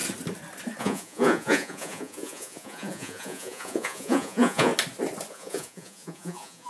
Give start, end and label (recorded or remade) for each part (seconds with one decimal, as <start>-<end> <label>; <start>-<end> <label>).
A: 0.0-0.8 recorded; 0.8-4.7 remade; 4.7-5.3 recorded; 5.3-6.7 remade